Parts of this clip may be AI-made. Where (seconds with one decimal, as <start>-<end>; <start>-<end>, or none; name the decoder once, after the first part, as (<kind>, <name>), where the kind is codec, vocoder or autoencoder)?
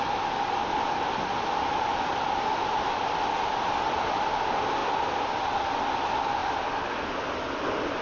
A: none